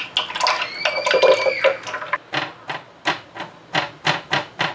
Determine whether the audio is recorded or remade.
recorded